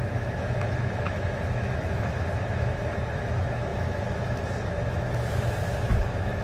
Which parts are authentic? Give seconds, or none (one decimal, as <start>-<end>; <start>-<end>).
none